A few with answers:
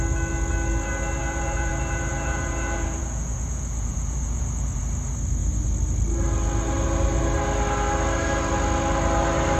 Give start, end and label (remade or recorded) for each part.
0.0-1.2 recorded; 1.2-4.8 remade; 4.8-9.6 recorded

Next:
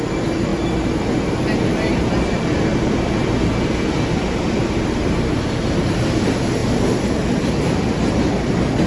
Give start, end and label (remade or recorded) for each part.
0.0-8.9 recorded

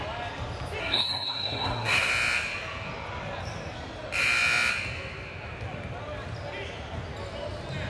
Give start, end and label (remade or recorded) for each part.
0.0-0.8 recorded; 0.8-2.1 remade; 2.1-7.9 recorded

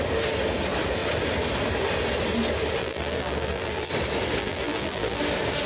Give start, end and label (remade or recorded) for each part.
0.0-2.8 recorded; 2.8-3.9 remade; 3.9-4.4 recorded; 4.4-5.2 remade; 5.2-5.7 recorded